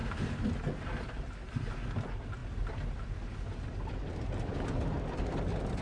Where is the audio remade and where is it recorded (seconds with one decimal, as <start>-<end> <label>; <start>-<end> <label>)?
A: 0.0-5.8 recorded